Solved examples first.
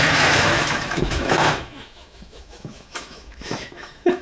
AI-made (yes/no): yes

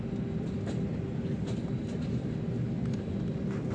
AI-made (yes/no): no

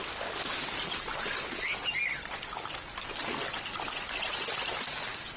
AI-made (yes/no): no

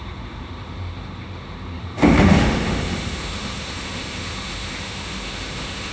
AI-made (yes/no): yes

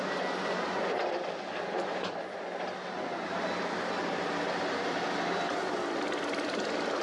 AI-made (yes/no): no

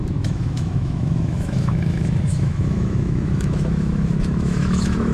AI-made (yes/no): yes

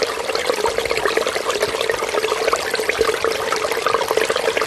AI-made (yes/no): no